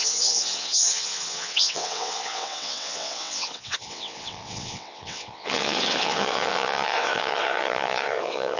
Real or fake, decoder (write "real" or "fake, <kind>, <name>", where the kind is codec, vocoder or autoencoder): fake, vocoder, WaveNeXt